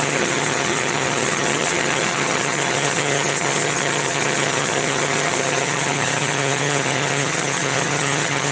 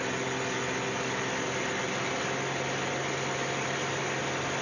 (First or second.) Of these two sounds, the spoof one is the first